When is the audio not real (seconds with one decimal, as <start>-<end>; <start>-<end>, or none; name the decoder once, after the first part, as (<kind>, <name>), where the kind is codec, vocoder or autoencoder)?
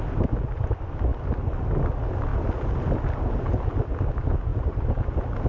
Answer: 2.3-2.9 (vocoder, BigVGAN v2); 4.5-5.0